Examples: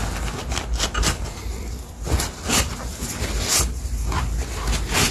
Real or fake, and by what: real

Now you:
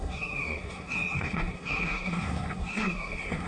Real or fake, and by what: fake, codec, SNAC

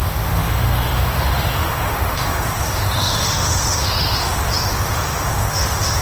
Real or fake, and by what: fake, autoencoder, DAC-VAE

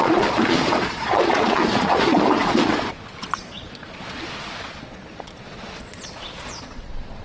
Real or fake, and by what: fake, vocoder, Vocos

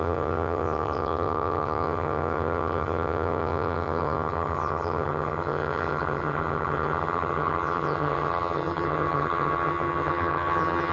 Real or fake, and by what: fake, vocoder, HiFi-GAN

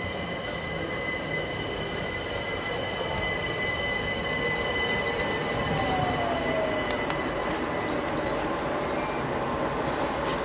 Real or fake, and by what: real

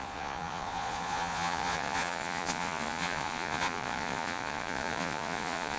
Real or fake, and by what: fake, vocoder, Vocos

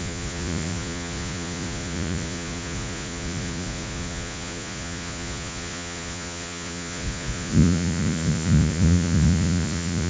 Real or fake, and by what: fake, vocoder, Vocos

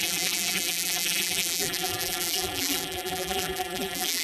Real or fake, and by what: fake, vocoder, BigVGAN v2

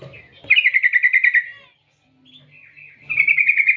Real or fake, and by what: real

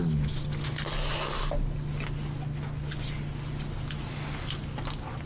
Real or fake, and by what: real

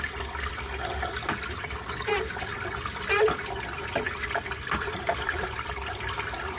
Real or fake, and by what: fake, vocoder, BigVGAN v2